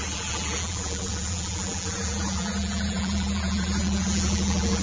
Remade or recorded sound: remade